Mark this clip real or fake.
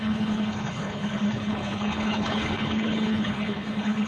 fake